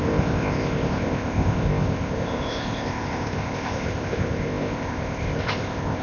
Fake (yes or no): yes